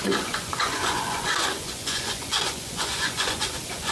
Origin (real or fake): fake